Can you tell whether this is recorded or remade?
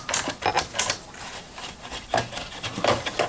recorded